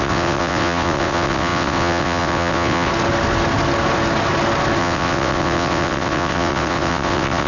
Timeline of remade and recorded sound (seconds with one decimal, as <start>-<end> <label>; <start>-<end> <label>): 0.0-2.9 remade; 2.9-4.8 recorded; 4.8-7.5 remade